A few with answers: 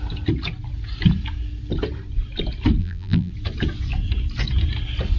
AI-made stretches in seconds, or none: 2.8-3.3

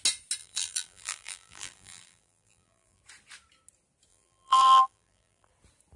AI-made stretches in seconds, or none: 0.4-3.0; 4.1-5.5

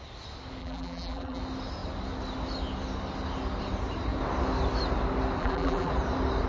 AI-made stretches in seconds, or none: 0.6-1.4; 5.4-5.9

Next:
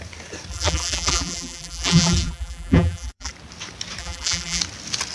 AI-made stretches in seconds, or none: 0.5-3.3; 4.0-4.6

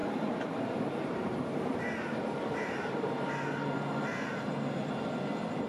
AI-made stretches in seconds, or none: 0.0-3.3